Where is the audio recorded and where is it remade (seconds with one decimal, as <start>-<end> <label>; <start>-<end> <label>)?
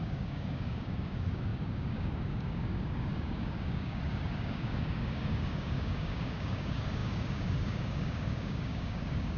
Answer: 0.0-9.4 remade